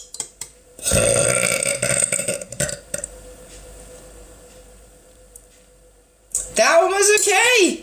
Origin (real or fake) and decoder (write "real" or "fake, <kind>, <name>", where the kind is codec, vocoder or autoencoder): fake, vocoder, BigVGAN v2